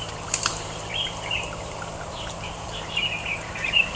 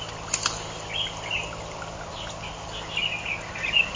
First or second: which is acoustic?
second